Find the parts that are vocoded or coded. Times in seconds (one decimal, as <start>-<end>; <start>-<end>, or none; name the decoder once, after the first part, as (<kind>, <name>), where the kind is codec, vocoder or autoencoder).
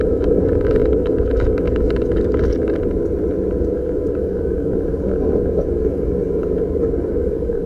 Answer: 0.0-2.8 (codec, DAC); 3.6-7.7